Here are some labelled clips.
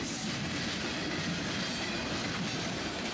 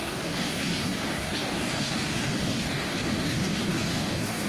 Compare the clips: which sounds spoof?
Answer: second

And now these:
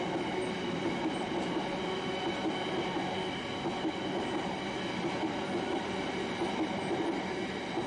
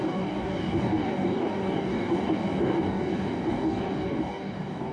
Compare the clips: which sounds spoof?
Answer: second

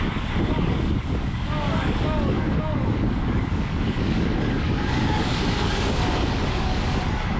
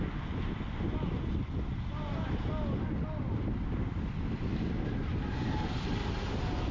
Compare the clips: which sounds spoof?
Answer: first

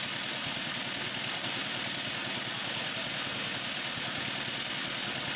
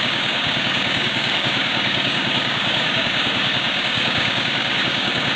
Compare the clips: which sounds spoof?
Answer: second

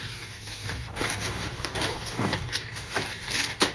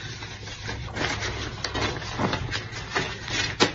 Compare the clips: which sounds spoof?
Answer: first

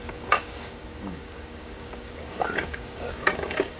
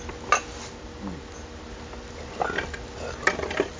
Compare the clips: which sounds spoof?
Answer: first